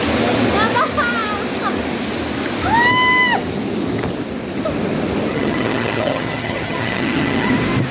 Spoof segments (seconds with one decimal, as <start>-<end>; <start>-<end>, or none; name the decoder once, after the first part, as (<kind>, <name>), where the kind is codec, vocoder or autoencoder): 5.3-7.5 (vocoder, HiFi-GAN)